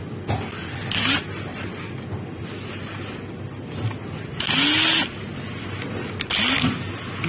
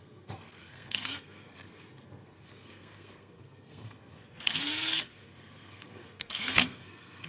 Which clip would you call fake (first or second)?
second